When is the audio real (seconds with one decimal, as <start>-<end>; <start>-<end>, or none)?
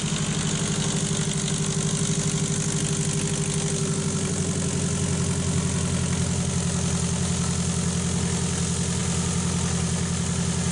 0.0-10.7